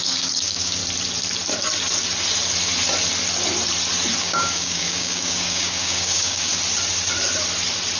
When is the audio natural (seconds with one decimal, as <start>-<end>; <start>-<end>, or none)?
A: 0.8-4.2; 6.5-8.0